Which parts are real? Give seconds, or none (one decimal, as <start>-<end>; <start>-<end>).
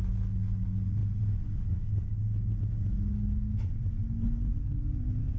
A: 0.0-5.4